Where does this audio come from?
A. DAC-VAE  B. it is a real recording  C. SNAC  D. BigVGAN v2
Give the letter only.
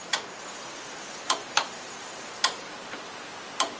D